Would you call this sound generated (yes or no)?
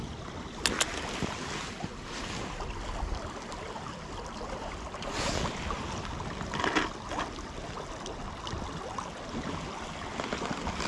no